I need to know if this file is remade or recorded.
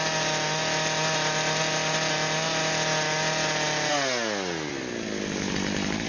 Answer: recorded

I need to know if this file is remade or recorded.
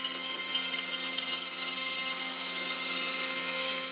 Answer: remade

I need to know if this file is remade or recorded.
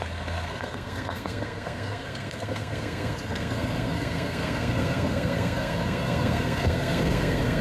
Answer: remade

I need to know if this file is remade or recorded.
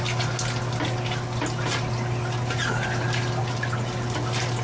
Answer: recorded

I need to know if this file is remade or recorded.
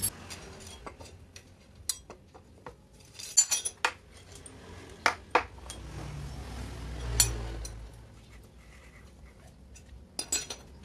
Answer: recorded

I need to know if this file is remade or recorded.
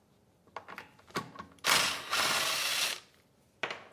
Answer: recorded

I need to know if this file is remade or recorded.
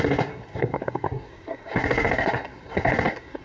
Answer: remade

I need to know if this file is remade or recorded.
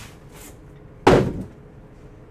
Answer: recorded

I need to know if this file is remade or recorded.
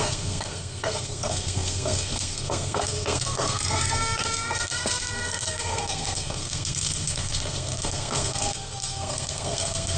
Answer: remade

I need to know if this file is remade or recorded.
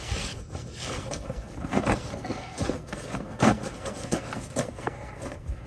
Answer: remade